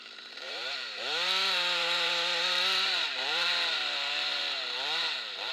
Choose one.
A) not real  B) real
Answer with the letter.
A